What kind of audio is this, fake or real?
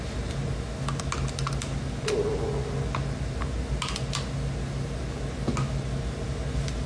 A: real